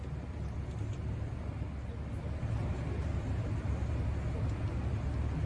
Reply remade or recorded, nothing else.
recorded